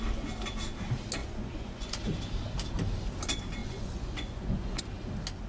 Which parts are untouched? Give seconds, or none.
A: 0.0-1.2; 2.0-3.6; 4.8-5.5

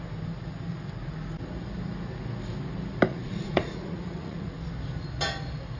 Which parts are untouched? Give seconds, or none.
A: 0.0-3.1; 4.6-5.8

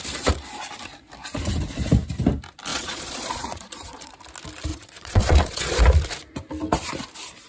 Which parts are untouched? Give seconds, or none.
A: 0.0-2.7; 4.1-4.7; 5.8-7.5